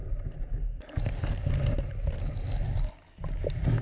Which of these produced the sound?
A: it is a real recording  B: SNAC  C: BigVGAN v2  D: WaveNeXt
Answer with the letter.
A